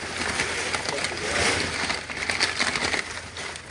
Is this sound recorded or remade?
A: recorded